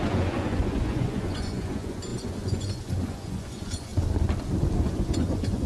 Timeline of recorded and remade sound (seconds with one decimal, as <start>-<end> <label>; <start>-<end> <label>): 0.0-3.9 remade; 3.9-4.8 recorded; 4.8-5.7 remade